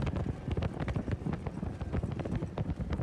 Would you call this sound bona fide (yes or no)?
yes